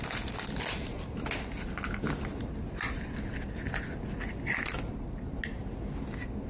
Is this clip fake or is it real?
real